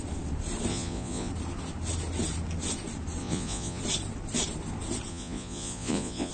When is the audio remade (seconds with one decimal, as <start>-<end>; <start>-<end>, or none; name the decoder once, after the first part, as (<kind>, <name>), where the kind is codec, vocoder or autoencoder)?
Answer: 0.7-1.3 (vocoder, Vocos); 3.2-3.8; 5.1-6.3